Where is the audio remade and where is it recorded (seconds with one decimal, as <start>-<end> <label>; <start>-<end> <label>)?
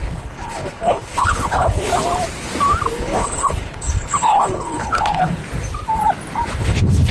0.0-1.9 remade; 1.9-2.9 recorded; 2.9-5.4 remade; 5.4-6.6 recorded; 6.6-7.1 remade